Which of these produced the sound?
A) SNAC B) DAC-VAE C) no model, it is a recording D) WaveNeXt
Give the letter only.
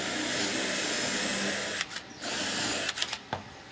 C